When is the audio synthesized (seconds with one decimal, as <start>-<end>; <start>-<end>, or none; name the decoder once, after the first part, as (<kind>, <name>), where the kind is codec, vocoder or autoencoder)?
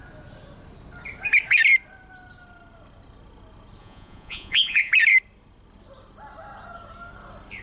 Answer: 3.8-4.9 (vocoder, Vocos)